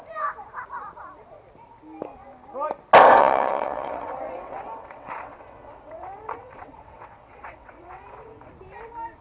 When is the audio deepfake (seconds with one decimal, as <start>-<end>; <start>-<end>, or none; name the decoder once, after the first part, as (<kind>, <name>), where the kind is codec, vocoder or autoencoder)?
3.2-8.5 (vocoder, WaveNeXt)